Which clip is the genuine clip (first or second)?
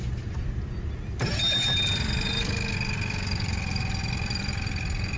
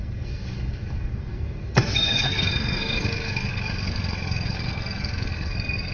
first